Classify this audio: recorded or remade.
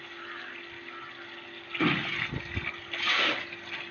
recorded